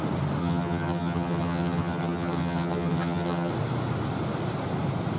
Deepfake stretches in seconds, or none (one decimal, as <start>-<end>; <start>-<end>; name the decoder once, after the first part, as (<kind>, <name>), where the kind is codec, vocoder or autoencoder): 0.4-3.5 (vocoder, HiFi-GAN)